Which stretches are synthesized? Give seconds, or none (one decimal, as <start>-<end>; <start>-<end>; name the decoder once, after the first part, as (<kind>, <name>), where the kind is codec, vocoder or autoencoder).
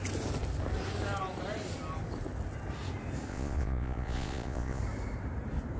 3.3-4.8 (vocoder, Vocos)